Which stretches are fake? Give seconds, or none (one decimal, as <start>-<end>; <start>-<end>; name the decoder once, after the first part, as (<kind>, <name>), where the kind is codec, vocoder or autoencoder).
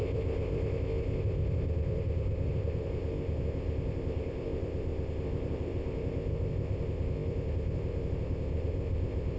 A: 0.0-9.4 (codec, ZipCodec)